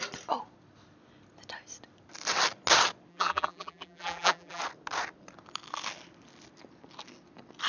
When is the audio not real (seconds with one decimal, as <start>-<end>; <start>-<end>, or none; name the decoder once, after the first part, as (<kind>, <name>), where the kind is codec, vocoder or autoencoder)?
3.1-4.6 (vocoder, BigVGAN v2)